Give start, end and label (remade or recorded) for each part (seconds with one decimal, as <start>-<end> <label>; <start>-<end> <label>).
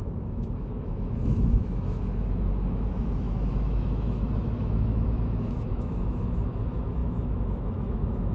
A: 0.0-8.3 remade